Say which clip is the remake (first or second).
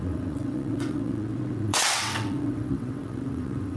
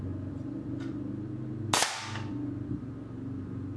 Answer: first